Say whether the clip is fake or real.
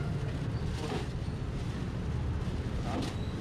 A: real